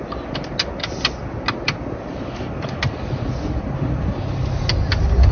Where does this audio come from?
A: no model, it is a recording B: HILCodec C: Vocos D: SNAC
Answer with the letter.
A